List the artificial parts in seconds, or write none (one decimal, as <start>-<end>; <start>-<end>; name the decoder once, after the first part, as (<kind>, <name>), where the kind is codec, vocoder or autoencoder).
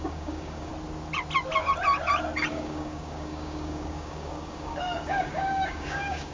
0.0-0.7 (codec, DAC); 2.5-6.3